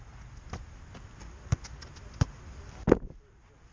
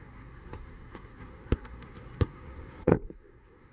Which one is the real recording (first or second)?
first